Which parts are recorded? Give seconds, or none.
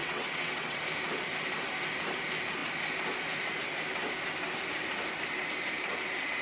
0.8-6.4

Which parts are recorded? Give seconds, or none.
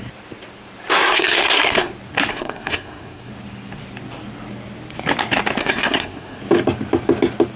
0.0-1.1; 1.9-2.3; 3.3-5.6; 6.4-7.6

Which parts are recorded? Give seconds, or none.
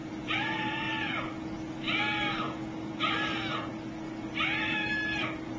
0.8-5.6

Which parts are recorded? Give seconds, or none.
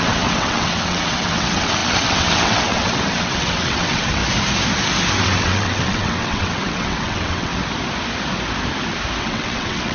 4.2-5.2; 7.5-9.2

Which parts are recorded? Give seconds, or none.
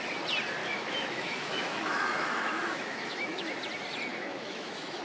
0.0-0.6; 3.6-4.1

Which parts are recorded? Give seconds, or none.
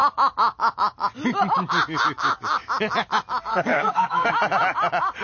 0.0-3.5; 4.3-5.2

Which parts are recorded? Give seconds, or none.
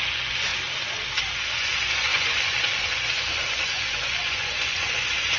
0.5-1.4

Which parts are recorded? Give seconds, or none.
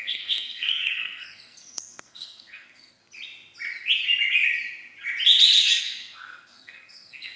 3.0-5.8